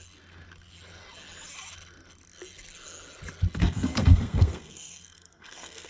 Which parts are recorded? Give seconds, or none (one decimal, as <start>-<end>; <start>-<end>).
0.0-3.6